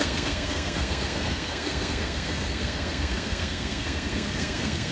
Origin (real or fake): fake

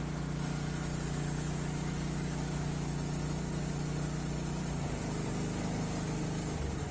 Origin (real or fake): real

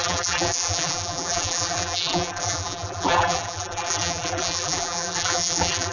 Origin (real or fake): fake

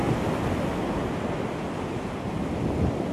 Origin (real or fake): real